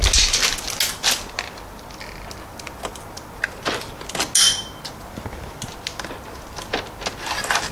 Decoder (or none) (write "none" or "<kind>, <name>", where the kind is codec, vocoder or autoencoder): none